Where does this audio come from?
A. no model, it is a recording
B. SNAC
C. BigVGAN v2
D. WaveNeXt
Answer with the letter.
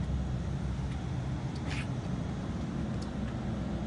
A